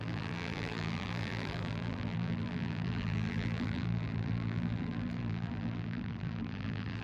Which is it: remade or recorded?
remade